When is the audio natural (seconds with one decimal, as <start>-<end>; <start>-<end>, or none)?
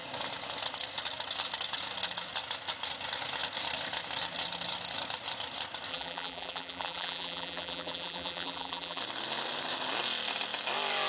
0.0-5.9; 9.0-11.1